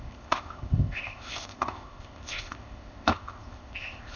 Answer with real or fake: fake